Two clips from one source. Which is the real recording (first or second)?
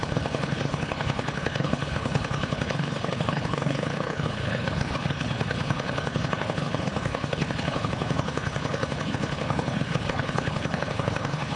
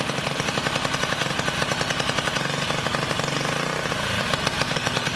second